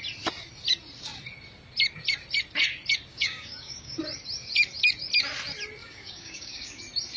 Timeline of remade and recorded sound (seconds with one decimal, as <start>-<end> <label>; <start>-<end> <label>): 0.0-3.1 recorded; 3.1-4.0 remade; 4.0-5.8 recorded; 5.8-6.8 remade; 6.8-7.2 recorded